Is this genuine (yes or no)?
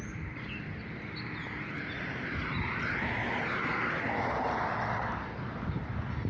yes